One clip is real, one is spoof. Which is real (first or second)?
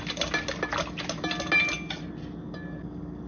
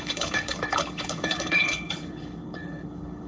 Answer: first